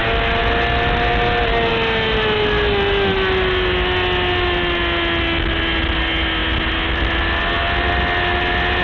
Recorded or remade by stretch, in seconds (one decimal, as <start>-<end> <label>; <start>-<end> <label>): 0.0-8.8 recorded